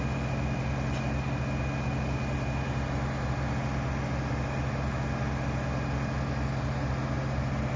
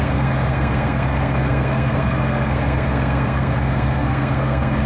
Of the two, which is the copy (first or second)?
second